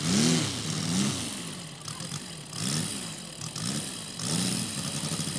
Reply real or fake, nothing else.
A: real